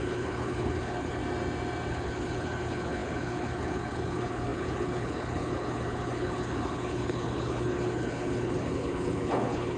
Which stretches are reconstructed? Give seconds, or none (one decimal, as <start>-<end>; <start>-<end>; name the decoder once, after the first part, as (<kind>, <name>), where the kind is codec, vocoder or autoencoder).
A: 0.0-1.2 (codec, HILCodec); 1.9-9.8